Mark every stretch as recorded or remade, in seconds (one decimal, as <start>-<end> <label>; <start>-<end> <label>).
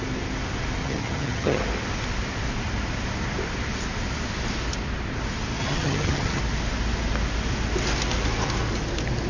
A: 0.0-0.8 recorded; 0.8-1.6 remade; 1.6-5.6 recorded; 5.6-6.4 remade; 6.4-9.3 recorded